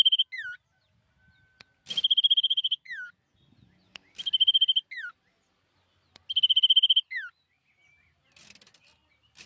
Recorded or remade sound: recorded